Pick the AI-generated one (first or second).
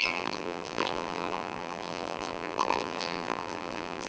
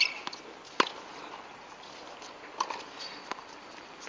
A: first